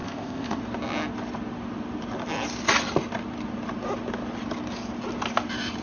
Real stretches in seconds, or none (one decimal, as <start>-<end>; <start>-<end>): 0.6-5.8